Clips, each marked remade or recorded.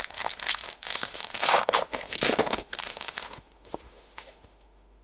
remade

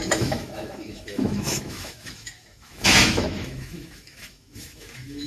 remade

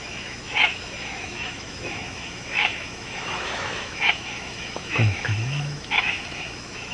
remade